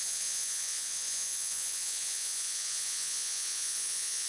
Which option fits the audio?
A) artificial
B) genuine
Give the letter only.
A